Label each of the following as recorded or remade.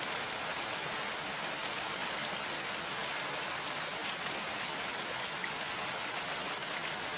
recorded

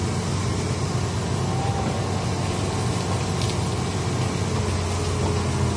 recorded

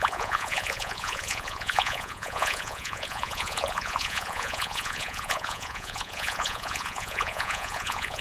remade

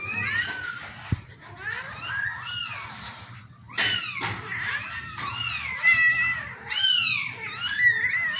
recorded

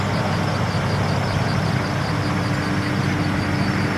recorded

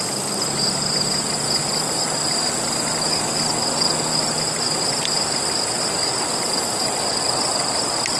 recorded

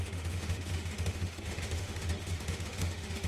remade